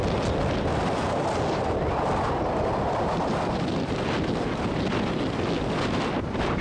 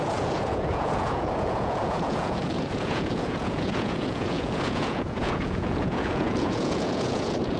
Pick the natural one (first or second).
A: first